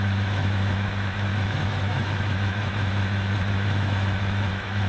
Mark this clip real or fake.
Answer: fake